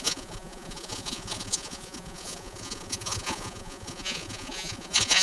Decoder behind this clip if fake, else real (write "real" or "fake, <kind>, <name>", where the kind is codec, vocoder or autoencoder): fake, vocoder, Vocos